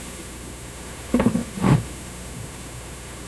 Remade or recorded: remade